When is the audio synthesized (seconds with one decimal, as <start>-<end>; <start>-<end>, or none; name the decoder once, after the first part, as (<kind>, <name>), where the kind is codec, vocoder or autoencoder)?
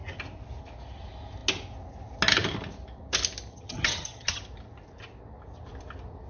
3.5-4.4 (vocoder, HiFi-GAN)